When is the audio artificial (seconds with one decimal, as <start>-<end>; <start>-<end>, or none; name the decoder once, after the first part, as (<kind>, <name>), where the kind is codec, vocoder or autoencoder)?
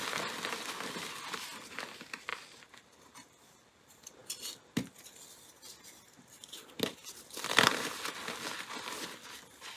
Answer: none